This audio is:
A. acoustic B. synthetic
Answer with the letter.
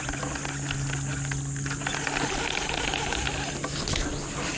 A